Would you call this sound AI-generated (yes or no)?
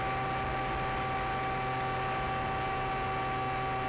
no